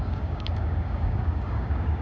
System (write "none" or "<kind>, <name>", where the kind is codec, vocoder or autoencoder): codec, DAC